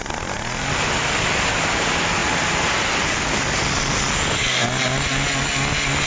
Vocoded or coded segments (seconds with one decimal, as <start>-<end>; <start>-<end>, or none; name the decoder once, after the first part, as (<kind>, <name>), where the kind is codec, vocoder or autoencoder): none